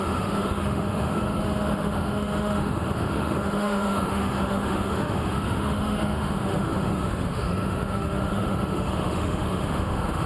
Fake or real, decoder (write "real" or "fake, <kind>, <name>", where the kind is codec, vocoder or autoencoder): fake, autoencoder, DAC-VAE